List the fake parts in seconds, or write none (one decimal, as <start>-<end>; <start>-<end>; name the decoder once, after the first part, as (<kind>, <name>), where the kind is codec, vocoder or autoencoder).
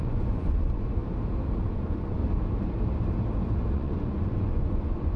0.0-1.0 (vocoder, Vocos); 1.6-2.2; 3.7-5.2